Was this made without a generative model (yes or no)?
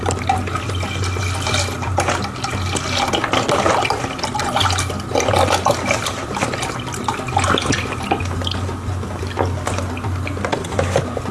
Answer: yes